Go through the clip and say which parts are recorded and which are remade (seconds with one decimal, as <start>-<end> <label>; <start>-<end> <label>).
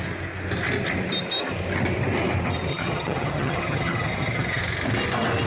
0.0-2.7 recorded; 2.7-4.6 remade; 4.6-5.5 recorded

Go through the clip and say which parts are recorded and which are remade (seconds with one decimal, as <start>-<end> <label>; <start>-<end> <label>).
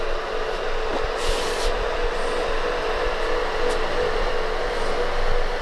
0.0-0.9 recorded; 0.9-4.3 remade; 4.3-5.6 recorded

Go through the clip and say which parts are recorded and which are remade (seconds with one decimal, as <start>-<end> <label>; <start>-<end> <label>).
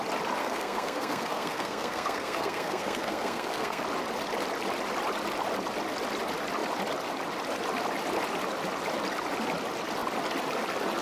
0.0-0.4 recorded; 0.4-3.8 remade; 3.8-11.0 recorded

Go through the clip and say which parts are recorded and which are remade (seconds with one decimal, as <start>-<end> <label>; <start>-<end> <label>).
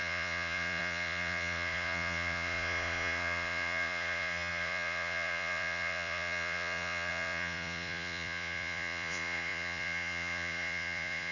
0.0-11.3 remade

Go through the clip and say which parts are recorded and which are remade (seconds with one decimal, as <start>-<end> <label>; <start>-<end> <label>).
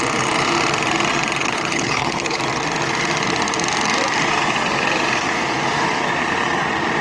0.0-1.4 recorded; 1.4-2.4 remade; 2.4-7.0 recorded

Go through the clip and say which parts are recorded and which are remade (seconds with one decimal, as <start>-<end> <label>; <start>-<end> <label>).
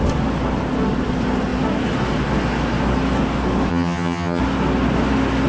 0.0-3.7 recorded; 3.7-4.4 remade; 4.4-5.5 recorded